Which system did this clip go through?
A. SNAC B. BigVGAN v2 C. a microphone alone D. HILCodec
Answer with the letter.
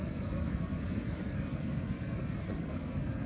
A